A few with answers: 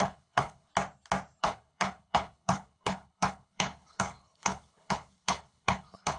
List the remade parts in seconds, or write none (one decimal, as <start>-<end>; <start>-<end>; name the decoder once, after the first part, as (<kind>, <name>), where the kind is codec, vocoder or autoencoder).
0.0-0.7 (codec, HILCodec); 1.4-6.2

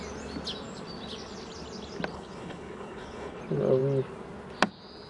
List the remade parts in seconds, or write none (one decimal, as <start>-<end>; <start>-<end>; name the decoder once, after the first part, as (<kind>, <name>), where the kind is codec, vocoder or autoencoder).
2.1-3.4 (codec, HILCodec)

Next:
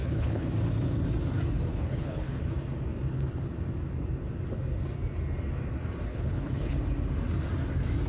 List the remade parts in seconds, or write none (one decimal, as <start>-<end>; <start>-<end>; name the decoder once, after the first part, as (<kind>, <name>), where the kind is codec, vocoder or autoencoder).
0.0-0.5 (codec, HILCodec); 1.7-2.4; 6.1-6.8

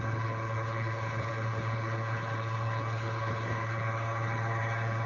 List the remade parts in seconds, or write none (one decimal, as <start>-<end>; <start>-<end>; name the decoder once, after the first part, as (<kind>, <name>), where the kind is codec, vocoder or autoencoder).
0.0-5.1 (codec, HILCodec)

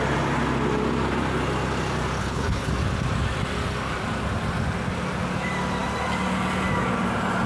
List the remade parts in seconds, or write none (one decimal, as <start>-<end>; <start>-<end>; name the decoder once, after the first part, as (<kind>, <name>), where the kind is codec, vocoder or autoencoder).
2.2-2.7 (codec, HILCodec)